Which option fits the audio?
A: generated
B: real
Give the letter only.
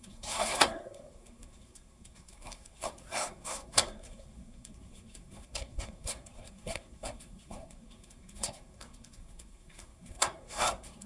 A